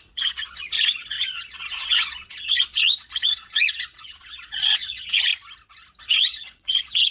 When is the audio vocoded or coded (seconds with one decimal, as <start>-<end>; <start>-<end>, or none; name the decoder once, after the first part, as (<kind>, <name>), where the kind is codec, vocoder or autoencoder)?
0.0-5.3 (vocoder, Vocos); 6.0-7.1